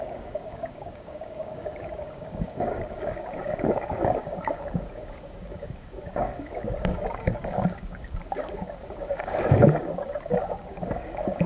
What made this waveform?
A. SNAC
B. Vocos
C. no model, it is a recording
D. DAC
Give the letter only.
D